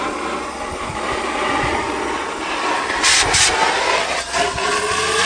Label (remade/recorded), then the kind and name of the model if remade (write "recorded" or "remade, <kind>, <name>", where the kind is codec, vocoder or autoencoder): recorded